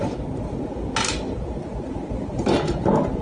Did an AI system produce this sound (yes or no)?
no